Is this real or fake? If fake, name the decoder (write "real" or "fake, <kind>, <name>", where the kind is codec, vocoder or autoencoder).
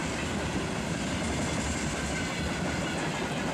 fake, vocoder, BigVGAN v2